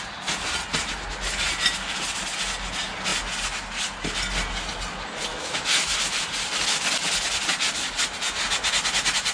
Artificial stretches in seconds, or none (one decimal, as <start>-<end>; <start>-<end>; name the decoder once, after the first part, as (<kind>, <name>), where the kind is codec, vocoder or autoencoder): 5.3-5.9 (autoencoder, DAC-VAE)

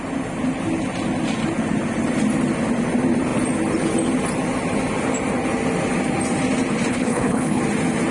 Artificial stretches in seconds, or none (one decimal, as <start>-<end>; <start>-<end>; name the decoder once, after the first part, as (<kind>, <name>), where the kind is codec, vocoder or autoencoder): 6.9-7.6 (codec, HILCodec)